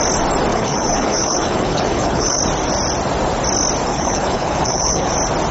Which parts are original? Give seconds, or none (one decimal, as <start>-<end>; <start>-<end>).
0.0-0.5; 2.4-3.9; 5.1-5.5